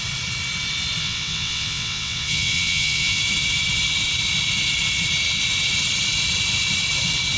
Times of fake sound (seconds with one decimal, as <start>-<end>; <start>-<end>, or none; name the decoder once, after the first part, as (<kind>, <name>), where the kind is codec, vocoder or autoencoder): 1.0-3.2 (vocoder, WaveNeXt)